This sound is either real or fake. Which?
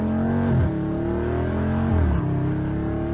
real